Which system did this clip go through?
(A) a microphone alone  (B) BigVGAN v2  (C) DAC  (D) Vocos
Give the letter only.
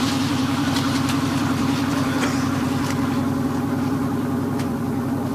B